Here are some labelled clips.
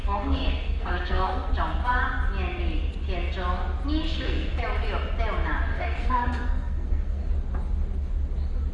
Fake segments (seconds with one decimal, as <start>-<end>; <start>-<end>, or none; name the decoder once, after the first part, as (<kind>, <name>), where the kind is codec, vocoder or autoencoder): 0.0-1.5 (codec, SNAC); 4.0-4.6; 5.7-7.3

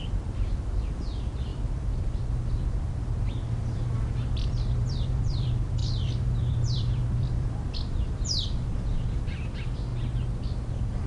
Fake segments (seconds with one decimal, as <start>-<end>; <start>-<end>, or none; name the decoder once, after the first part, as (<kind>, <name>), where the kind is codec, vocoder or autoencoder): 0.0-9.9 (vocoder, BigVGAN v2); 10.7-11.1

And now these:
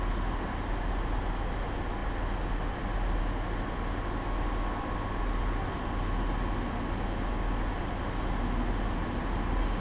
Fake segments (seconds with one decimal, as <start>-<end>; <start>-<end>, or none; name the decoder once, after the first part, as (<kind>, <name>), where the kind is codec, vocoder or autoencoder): none

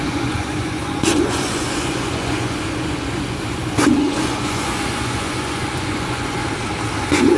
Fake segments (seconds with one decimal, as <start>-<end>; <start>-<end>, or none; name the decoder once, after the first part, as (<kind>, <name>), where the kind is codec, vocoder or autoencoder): 0.0-6.4 (vocoder, Vocos); 7.0-7.4

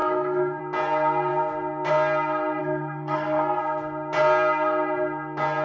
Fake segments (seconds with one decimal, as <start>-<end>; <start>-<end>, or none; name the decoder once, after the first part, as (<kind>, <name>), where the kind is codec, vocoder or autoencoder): 0.0-0.6 (codec, SNAC); 2.6-3.6